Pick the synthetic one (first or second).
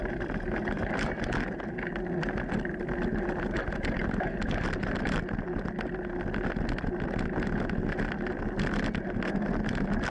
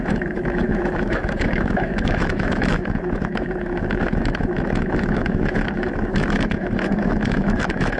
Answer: second